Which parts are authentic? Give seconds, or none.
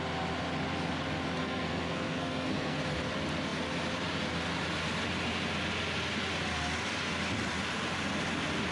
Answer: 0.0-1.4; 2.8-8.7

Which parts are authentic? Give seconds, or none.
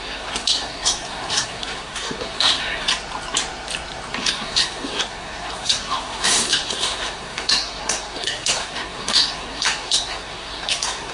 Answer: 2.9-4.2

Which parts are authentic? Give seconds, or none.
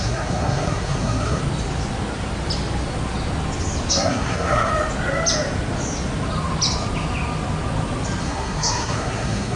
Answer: 1.4-3.9; 4.7-8.2